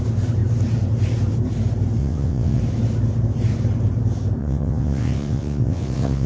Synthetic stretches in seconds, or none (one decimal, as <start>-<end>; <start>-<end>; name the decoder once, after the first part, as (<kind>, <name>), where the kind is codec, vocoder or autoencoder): 2.0-2.6 (vocoder, WaveNeXt); 4.4-6.3